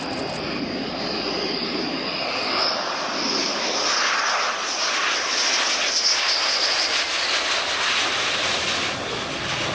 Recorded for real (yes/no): yes